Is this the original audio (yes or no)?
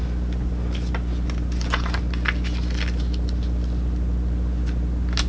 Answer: yes